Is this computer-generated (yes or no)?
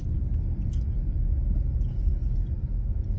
no